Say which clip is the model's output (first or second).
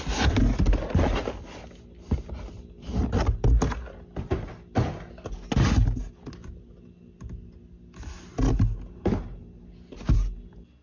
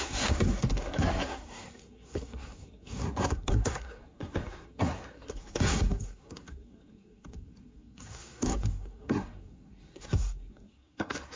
second